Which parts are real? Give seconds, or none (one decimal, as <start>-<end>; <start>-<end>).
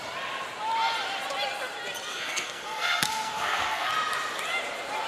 0.0-2.1; 3.9-5.1